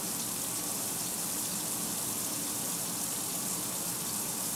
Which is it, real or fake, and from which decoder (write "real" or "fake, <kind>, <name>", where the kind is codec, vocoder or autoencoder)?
real